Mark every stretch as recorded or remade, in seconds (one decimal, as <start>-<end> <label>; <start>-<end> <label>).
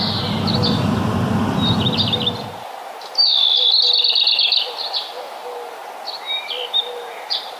0.0-7.6 recorded